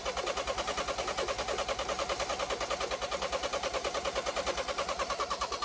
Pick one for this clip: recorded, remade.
recorded